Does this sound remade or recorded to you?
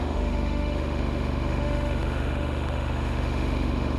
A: remade